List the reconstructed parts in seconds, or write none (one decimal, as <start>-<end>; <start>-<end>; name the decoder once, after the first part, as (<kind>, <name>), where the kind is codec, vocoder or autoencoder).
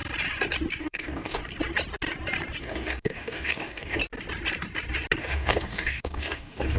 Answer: 0.8-1.4 (codec, DAC); 2.6-4.0; 5.2-6.8